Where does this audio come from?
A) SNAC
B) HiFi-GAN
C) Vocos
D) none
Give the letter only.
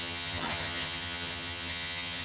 B